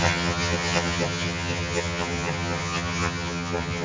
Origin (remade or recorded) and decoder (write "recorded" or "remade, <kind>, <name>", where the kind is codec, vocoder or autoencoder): remade, vocoder, HiFi-GAN